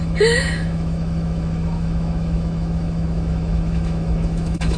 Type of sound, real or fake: fake